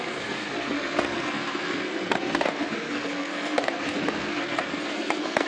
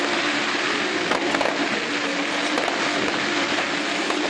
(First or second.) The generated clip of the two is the first